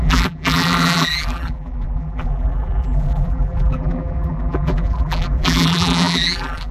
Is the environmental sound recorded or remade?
remade